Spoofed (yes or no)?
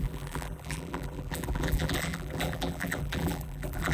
yes